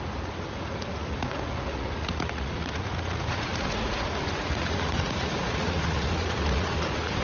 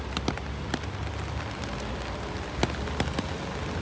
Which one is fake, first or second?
first